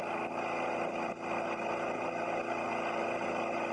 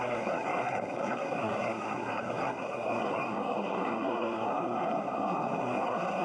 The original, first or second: first